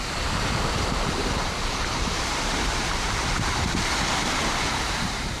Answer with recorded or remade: remade